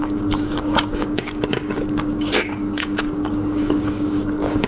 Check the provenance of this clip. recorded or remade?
remade